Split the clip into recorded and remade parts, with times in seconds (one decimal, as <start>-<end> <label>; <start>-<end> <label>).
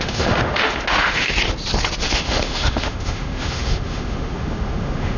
0.0-1.3 remade; 1.3-2.0 recorded; 2.0-5.2 remade